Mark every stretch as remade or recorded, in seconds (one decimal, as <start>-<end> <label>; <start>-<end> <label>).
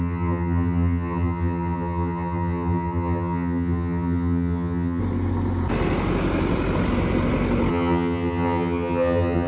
0.0-5.0 remade; 5.0-7.7 recorded; 7.7-9.5 remade